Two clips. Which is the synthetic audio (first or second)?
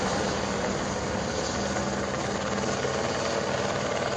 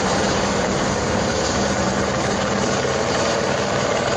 second